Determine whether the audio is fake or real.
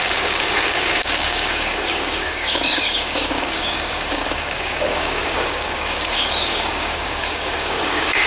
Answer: fake